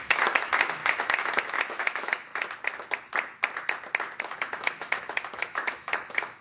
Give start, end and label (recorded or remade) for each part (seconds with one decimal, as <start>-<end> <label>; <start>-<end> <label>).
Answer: 0.0-2.3 remade; 2.3-4.2 recorded; 4.2-6.4 remade